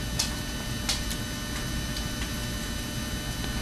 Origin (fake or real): real